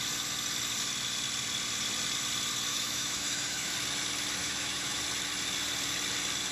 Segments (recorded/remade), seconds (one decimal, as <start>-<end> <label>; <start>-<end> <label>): 0.0-2.7 recorded; 2.7-3.7 remade; 3.7-4.4 recorded; 4.4-5.0 remade; 5.0-6.5 recorded